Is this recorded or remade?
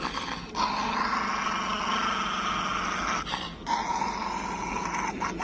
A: recorded